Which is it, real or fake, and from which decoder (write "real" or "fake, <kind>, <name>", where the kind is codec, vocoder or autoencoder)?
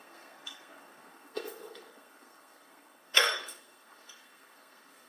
fake, codec, SNAC